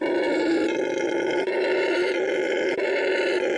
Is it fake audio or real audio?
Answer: real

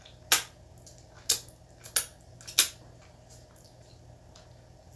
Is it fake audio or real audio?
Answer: real